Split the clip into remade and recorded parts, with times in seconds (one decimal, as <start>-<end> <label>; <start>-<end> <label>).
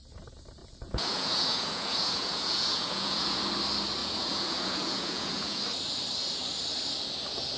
0.0-0.6 recorded; 0.6-3.4 remade; 3.4-4.0 recorded; 4.0-5.6 remade; 5.6-7.6 recorded